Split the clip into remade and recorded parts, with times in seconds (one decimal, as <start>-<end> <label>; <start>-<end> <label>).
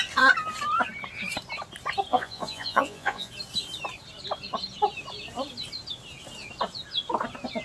0.0-2.1 recorded; 2.1-3.3 remade; 3.3-7.6 recorded